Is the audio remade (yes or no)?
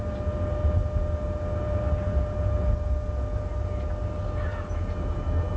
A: no